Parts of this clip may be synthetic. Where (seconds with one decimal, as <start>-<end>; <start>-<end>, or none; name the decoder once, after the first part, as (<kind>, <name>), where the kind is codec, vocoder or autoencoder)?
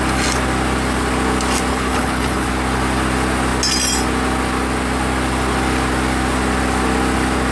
1.7-2.5 (codec, HILCodec)